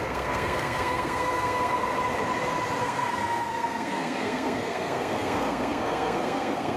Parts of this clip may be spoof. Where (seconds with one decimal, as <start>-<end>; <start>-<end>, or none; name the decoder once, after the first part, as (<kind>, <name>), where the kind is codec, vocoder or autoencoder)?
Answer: 0.0-1.8 (codec, SNAC); 2.8-6.8